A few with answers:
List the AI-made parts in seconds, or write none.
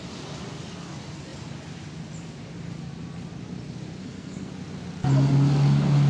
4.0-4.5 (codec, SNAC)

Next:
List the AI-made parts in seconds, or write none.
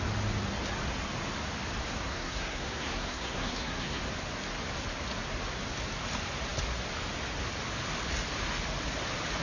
1.8-4.0 (codec, SNAC)